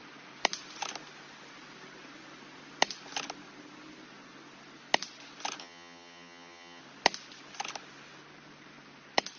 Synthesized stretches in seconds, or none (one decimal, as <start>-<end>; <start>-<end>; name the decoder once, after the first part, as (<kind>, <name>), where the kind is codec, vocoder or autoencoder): 5.6-6.8 (vocoder, HiFi-GAN)